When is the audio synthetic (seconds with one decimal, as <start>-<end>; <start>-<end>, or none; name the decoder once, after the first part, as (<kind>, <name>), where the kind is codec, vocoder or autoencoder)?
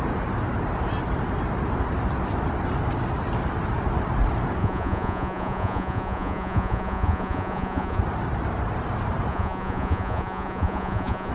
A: 4.6-8.0 (vocoder, Vocos); 9.3-11.3